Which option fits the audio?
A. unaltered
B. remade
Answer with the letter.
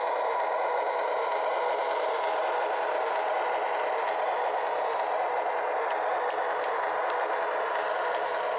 A